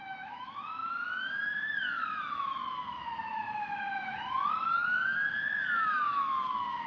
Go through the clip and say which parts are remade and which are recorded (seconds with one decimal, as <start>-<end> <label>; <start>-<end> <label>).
0.0-6.9 remade